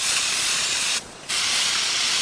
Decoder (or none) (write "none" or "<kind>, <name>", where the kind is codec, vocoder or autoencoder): vocoder, Vocos